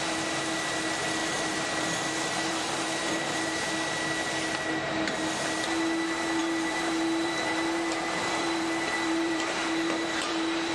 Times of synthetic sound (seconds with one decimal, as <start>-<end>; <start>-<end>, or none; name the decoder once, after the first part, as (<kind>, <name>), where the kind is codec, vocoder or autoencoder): 1.2-3.7 (vocoder, BigVGAN v2); 6.4-10.7